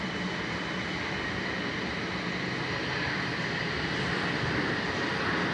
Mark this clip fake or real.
real